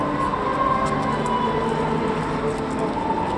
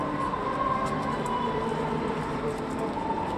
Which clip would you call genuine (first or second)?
first